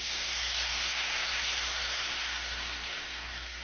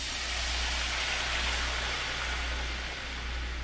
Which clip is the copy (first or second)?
first